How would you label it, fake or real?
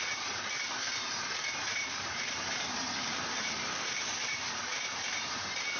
fake